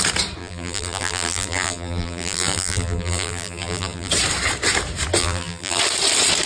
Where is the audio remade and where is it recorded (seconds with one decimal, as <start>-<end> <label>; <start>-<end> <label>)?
0.0-0.4 recorded; 0.4-4.1 remade; 4.1-5.2 recorded; 5.2-5.8 remade; 5.8-6.5 recorded

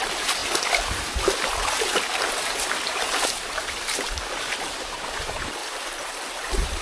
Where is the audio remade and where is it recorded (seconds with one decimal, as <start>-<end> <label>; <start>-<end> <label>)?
0.0-0.4 remade; 0.4-4.5 recorded; 4.5-6.8 remade

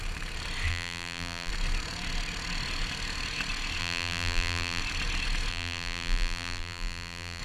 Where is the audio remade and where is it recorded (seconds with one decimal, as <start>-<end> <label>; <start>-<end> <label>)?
0.0-0.7 recorded; 0.7-1.5 remade; 1.5-3.8 recorded; 3.8-4.8 remade; 4.8-5.5 recorded; 5.5-7.4 remade

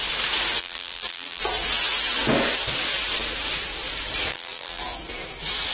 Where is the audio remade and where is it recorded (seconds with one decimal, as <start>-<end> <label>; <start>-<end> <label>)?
0.0-0.6 recorded; 0.6-1.4 remade; 1.4-4.3 recorded; 4.3-4.8 remade; 4.8-5.7 recorded

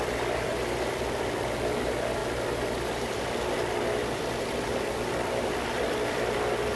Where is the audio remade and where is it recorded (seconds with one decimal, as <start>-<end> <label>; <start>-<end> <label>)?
0.0-2.2 remade; 2.2-5.4 recorded; 5.4-6.8 remade

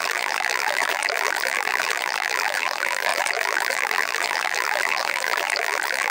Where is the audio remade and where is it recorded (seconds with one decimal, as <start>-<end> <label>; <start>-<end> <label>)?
0.0-6.1 remade

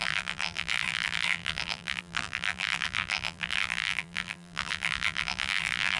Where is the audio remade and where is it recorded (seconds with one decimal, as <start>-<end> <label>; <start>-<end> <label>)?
0.0-6.0 remade

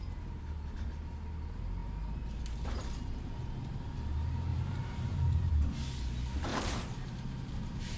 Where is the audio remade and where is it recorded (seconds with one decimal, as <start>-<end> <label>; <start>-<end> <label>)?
0.0-4.5 recorded; 4.5-5.5 remade; 5.5-6.5 recorded; 6.5-8.0 remade